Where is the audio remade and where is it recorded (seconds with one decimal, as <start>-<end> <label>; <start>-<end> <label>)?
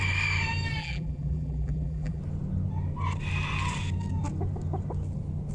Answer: 0.0-0.8 recorded; 0.8-2.2 remade; 2.2-5.5 recorded